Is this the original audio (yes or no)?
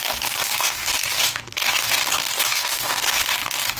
no